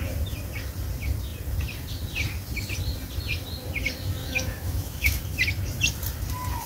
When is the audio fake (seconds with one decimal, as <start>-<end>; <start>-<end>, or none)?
4.2-5.2